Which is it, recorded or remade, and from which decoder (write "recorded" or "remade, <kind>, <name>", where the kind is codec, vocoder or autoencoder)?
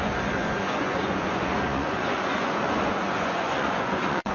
remade, vocoder, Vocos